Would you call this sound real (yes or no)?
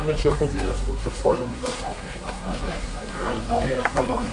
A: no